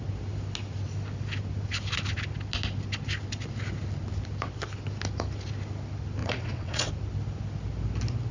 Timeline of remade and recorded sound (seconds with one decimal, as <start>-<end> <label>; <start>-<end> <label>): 0.0-6.2 recorded; 6.2-6.9 remade; 6.9-8.3 recorded